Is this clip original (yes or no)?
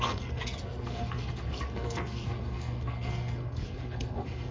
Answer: no